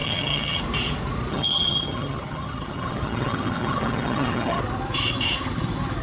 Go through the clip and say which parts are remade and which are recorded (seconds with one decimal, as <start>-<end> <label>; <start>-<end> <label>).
0.0-0.6 remade; 0.6-1.3 recorded; 1.3-4.6 remade; 4.6-6.0 recorded